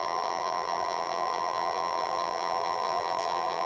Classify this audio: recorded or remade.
remade